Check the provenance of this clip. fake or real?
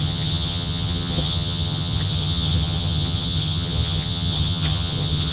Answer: fake